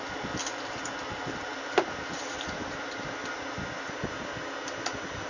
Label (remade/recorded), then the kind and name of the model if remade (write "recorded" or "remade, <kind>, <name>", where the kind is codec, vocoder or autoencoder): recorded